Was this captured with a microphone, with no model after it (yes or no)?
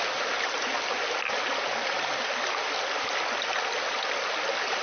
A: yes